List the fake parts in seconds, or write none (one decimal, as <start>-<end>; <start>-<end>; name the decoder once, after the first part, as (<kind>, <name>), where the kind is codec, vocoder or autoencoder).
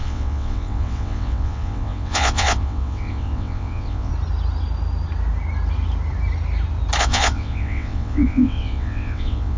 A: 0.0-4.1 (vocoder, WaveNeXt); 7.0-9.6